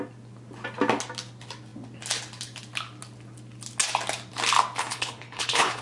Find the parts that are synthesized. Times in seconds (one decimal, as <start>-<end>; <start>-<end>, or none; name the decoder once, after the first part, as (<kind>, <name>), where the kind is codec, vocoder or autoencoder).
4.8-5.8 (codec, HILCodec)